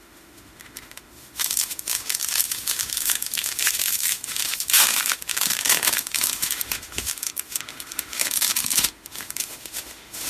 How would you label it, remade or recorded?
remade